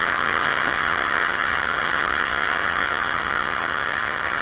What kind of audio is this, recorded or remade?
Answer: remade